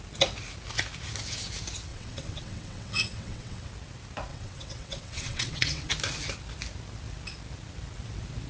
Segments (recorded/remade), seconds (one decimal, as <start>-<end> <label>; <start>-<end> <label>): 0.0-1.9 recorded; 1.9-3.7 remade; 3.7-4.3 recorded; 4.3-5.9 remade; 5.9-8.5 recorded